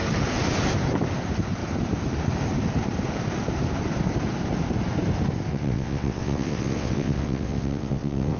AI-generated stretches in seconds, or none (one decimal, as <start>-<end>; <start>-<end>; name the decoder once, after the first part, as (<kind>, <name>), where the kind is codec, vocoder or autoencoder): 5.5-8.4 (vocoder, WaveNeXt)